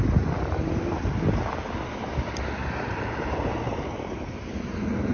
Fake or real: real